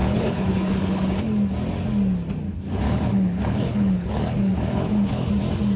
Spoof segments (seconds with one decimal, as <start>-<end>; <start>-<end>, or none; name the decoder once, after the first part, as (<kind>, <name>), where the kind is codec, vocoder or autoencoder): 0.0-1.2 (codec, HILCodec); 2.5-5.3